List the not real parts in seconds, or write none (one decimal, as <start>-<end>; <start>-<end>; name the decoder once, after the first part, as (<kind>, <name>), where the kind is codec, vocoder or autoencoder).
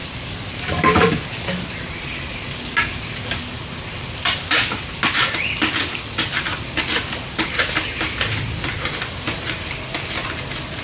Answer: 0.0-1.1 (vocoder, BigVGAN v2)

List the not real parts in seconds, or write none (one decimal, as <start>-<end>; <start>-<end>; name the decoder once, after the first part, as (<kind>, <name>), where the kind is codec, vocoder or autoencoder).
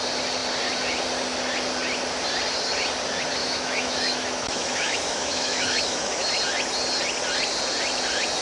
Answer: 3.4-6.3 (autoencoder, DAC-VAE)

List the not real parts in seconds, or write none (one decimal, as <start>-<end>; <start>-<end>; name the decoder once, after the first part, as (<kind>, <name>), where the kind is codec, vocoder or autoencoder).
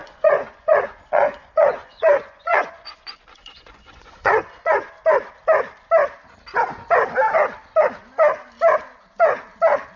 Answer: 0.0-4.9 (vocoder, Vocos)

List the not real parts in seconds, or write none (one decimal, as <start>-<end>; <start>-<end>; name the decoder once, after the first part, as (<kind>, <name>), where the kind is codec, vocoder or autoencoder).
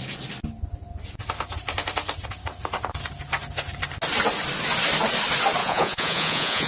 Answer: 5.6-6.7 (vocoder, Vocos)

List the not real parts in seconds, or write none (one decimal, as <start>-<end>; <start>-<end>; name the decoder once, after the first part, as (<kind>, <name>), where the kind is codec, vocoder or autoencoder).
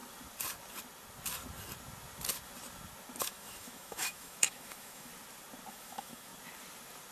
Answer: 3.2-5.1 (autoencoder, DAC-VAE); 5.7-6.3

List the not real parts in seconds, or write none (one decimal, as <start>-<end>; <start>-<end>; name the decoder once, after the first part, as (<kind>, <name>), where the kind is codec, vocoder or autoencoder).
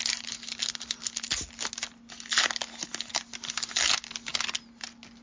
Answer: none